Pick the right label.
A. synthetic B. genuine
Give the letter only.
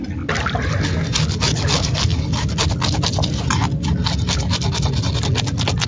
B